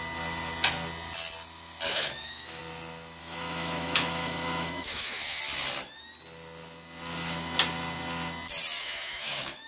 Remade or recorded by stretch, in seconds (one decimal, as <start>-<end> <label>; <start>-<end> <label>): 0.0-1.9 recorded; 1.9-2.6 remade; 2.6-3.2 recorded; 3.2-5.4 remade; 5.4-8.8 recorded; 8.8-9.7 remade